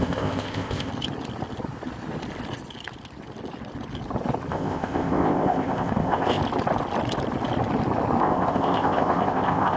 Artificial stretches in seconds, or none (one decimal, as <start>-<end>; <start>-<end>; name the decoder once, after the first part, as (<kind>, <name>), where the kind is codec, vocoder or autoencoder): 0.0-0.9 (codec, ZipCodec); 4.5-6.4; 8.2-9.8